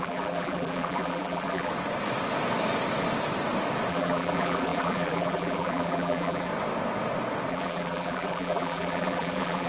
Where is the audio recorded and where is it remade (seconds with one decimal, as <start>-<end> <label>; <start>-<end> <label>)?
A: 0.0-1.7 remade; 1.7-3.9 recorded; 3.9-6.5 remade; 6.5-7.5 recorded; 7.5-9.7 remade